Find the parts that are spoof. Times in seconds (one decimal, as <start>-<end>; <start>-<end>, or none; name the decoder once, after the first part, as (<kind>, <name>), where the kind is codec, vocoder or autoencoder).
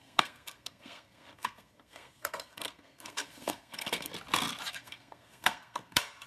0.0-4.1 (codec, SNAC); 4.7-6.3